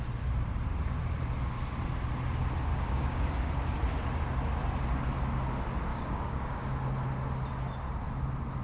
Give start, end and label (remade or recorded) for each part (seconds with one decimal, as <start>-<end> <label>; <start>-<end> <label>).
0.0-2.7 recorded; 2.7-3.5 remade; 3.5-5.9 recorded; 5.9-6.7 remade; 6.7-8.6 recorded